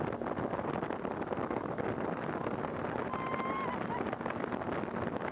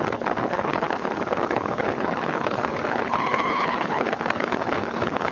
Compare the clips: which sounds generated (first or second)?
second